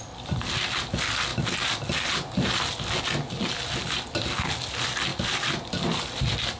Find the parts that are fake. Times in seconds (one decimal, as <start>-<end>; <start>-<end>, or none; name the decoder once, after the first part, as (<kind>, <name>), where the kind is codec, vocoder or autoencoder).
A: none